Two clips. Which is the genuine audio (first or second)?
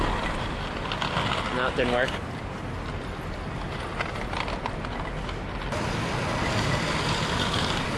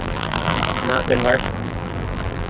first